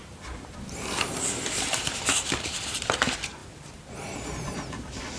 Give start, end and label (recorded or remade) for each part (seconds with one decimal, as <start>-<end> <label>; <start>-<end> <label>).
0.0-3.0 remade; 3.0-3.4 recorded; 3.4-5.2 remade